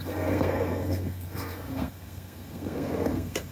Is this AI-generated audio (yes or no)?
yes